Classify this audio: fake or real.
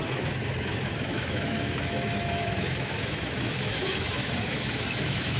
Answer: fake